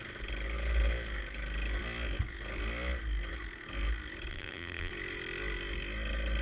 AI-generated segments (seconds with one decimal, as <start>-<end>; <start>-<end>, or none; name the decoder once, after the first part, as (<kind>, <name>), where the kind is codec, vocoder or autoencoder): 4.3-4.9 (vocoder, BigVGAN v2)